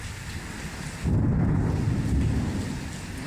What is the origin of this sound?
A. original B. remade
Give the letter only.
A